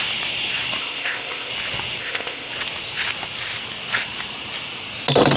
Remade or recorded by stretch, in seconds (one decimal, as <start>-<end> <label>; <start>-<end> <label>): 0.0-0.8 recorded; 0.8-1.5 remade; 1.5-2.0 recorded; 2.0-2.5 remade; 2.5-5.4 recorded